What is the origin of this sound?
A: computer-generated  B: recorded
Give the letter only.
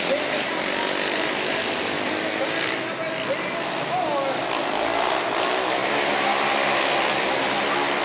B